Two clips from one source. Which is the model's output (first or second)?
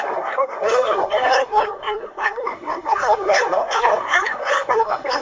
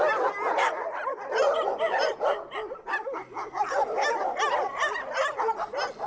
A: first